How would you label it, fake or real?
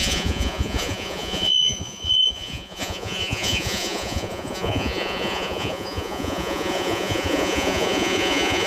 fake